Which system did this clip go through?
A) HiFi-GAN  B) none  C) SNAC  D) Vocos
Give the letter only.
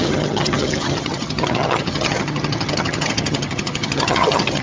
A